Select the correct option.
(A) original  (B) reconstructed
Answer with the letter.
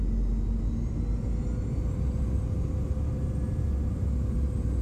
A